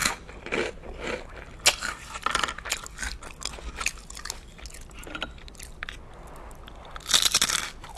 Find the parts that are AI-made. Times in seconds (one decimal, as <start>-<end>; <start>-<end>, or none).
none